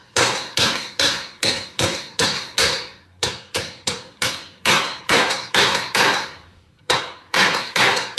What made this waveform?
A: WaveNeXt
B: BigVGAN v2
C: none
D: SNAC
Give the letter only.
D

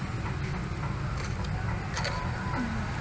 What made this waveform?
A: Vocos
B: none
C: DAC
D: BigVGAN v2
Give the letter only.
B